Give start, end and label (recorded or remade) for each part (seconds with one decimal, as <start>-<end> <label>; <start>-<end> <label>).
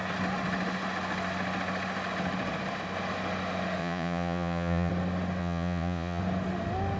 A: 0.0-3.8 recorded; 3.8-4.9 remade; 4.9-5.4 recorded; 5.4-6.2 remade; 6.2-7.0 recorded